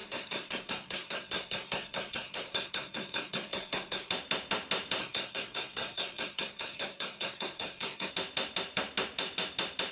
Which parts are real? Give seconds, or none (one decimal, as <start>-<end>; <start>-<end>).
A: 4.1-5.0; 8.1-9.9